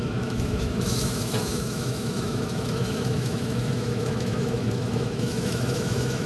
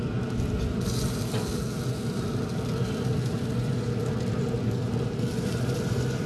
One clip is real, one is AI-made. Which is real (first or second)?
second